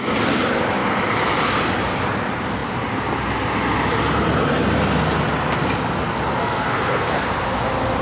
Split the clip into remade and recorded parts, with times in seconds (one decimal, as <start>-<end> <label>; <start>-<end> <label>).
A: 0.0-6.4 recorded; 6.4-7.2 remade; 7.2-8.0 recorded